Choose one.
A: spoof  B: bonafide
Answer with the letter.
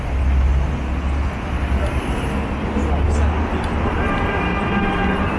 B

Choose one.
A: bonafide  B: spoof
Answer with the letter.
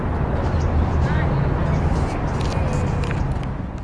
A